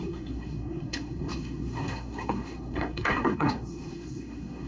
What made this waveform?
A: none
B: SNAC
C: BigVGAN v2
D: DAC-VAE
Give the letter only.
B